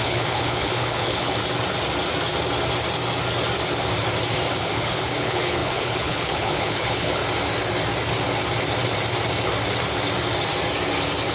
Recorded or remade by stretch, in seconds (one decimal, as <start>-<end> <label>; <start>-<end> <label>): 0.0-1.4 remade; 1.4-4.6 recorded; 4.6-7.2 remade; 7.2-11.3 recorded